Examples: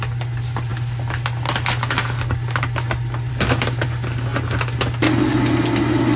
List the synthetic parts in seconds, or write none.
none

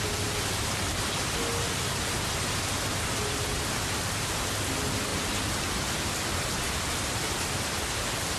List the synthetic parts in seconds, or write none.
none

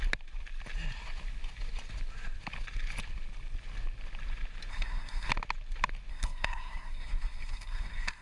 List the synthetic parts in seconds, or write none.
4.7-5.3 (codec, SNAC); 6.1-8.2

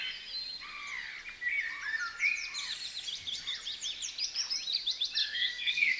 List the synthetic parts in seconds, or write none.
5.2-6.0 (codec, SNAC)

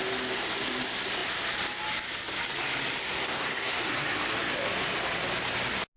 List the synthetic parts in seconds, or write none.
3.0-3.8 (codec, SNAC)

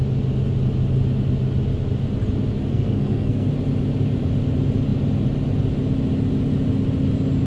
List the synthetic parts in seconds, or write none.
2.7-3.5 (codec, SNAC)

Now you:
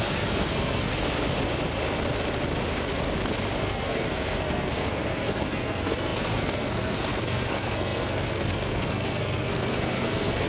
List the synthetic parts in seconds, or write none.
0.0-0.9 (codec, SNAC); 3.6-10.5